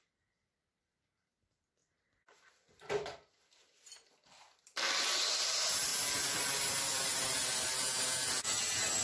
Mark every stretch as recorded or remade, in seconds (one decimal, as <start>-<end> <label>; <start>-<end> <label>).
0.0-5.9 remade; 5.9-6.8 recorded; 6.8-9.0 remade

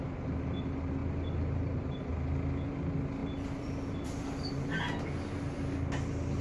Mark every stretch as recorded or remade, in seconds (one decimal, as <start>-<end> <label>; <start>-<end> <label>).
0.0-1.0 recorded; 1.0-2.1 remade; 2.1-3.2 recorded; 3.2-4.5 remade; 4.5-6.4 recorded

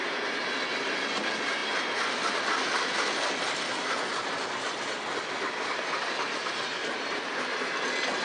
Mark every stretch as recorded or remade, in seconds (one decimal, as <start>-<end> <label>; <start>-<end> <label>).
0.0-6.8 recorded; 6.8-7.6 remade; 7.6-8.2 recorded